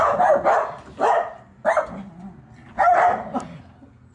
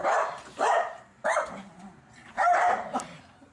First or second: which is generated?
second